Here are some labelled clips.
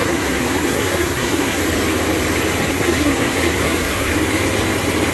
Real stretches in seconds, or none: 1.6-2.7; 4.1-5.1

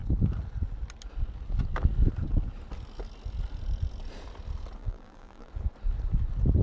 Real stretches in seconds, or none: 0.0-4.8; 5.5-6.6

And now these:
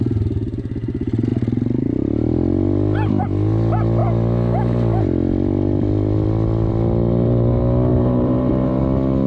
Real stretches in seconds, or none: 0.0-7.9; 8.8-9.3

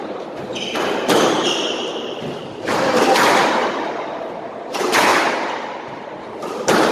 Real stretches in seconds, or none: 3.6-4.1; 5.1-5.8

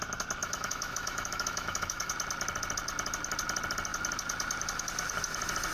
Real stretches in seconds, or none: 0.0-0.4; 2.1-5.7

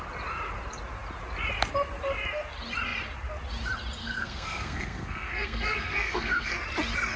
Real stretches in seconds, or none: 0.0-4.0; 6.5-7.2

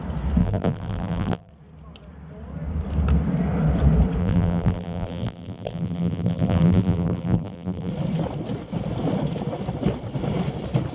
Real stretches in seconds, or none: 0.0-0.4; 1.5-4.2; 7.9-10.9

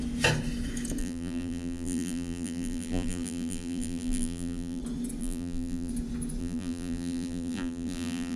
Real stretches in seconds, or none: 0.0-1.0; 4.8-5.2; 5.9-6.4